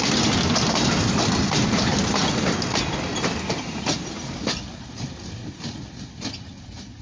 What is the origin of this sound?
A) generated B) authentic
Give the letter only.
B